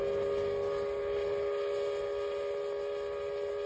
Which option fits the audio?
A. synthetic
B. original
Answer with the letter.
B